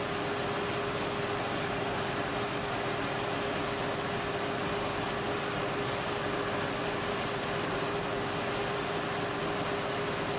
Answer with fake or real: real